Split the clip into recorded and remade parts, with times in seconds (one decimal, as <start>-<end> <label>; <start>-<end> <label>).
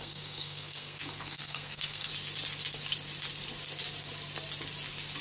0.0-2.1 remade; 2.1-5.2 recorded